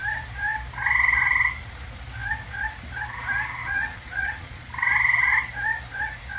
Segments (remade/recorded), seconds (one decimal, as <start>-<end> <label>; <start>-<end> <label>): 0.0-3.6 recorded; 3.6-4.7 remade; 4.7-6.4 recorded